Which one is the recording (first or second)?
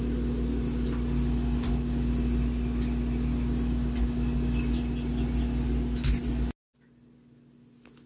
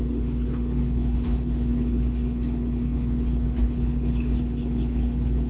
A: first